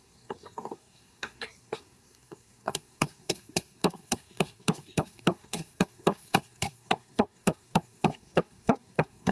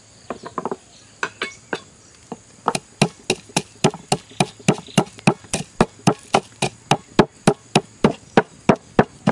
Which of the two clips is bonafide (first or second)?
second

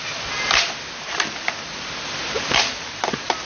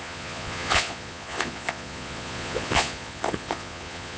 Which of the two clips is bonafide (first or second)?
first